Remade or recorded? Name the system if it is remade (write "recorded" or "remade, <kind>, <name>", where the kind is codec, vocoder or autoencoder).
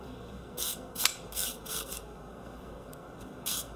remade, codec, SNAC